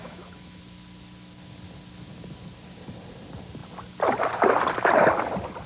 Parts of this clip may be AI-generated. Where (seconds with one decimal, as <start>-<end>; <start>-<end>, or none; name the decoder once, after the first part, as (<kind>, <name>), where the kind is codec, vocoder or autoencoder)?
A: 0.0-0.6 (autoencoder, DAC-VAE)

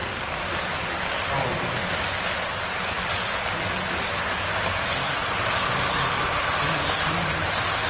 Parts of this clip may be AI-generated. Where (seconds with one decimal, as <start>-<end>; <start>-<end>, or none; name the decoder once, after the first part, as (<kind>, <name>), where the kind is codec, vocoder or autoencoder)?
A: none

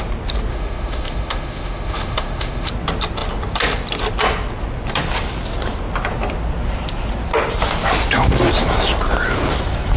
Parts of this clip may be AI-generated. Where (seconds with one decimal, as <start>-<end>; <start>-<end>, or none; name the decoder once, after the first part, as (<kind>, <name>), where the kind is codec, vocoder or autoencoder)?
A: 0.5-2.7 (autoencoder, DAC-VAE)

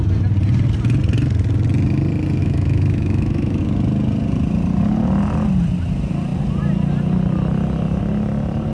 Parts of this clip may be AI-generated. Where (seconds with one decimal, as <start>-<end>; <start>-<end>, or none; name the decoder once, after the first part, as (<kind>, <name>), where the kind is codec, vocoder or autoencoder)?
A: 2.4-3.6 (autoencoder, DAC-VAE)

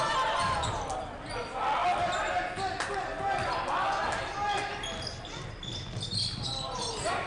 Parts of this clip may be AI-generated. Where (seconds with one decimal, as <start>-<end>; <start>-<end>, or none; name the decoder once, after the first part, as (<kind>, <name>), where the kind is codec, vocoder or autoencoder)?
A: none